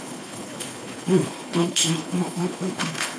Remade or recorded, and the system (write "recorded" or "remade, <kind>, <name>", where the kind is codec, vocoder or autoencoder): remade, codec, HILCodec